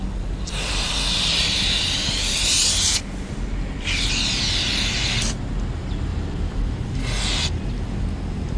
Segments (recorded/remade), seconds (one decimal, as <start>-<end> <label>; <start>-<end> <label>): 0.0-6.1 recorded; 6.1-7.3 remade; 7.3-8.6 recorded